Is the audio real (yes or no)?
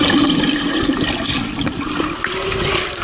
yes